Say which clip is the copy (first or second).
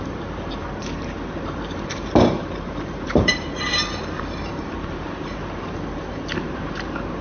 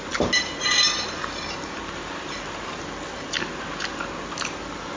first